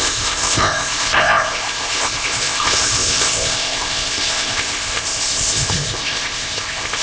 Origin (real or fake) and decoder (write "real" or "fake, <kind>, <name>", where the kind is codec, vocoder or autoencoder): fake, codec, ZipCodec